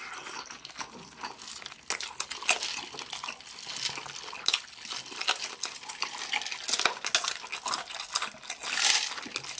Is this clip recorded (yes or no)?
yes